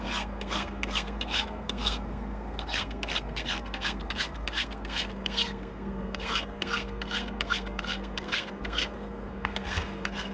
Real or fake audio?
fake